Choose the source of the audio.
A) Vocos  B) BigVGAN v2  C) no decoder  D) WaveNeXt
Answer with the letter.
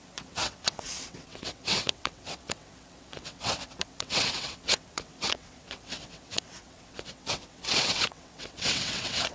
D